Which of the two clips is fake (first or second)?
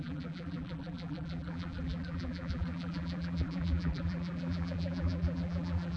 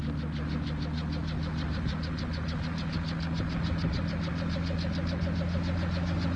first